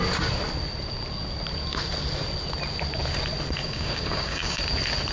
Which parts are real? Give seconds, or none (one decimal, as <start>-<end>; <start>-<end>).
0.0-3.6; 4.6-5.1